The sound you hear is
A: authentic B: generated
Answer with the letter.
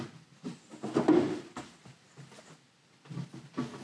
A